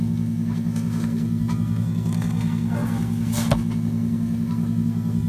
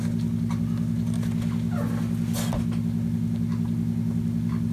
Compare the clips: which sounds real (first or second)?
second